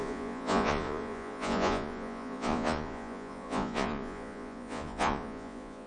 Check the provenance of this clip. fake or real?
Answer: fake